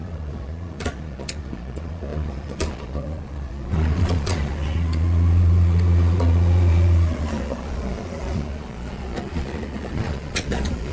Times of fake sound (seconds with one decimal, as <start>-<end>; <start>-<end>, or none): 0.0-10.9